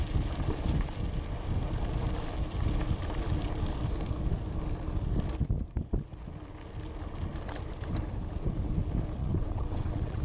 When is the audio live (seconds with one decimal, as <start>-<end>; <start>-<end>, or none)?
0.0-9.2